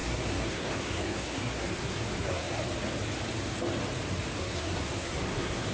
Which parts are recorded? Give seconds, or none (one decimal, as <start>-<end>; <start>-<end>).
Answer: 2.6-4.4